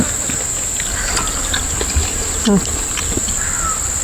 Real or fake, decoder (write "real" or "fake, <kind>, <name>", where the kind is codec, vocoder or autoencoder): real